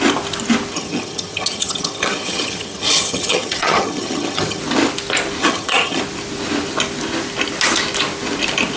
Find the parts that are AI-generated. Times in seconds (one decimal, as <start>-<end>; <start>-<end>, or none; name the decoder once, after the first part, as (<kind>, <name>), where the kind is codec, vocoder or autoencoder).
0.7-4.6 (vocoder, HiFi-GAN); 5.4-6.0